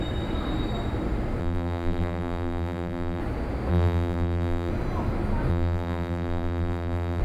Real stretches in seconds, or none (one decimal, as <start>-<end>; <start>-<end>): 0.0-1.4; 3.2-3.7; 4.7-5.5